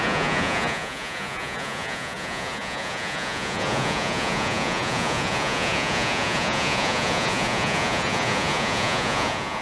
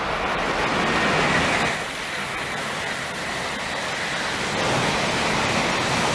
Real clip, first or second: second